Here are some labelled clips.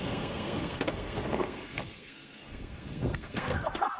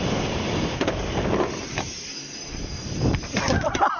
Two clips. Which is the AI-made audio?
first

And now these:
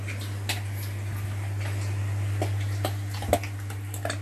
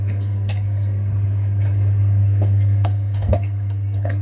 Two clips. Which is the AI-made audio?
second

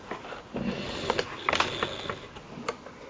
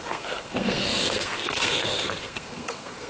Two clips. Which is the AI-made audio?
second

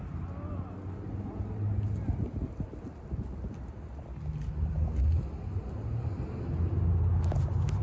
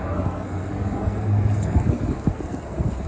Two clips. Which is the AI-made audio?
second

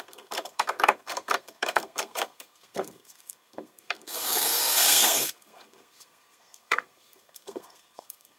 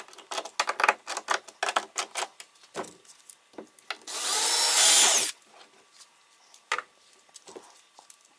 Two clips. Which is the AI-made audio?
first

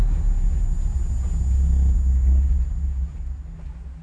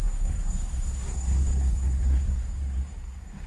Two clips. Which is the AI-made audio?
second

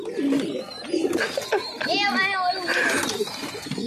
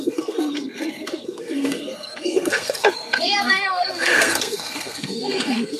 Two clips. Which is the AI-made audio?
second